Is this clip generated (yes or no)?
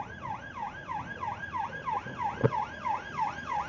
yes